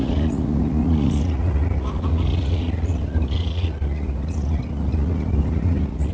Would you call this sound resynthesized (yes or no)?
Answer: yes